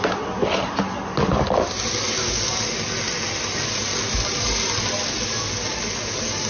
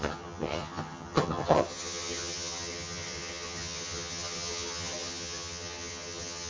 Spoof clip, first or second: second